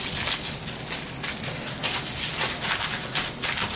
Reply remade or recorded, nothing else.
recorded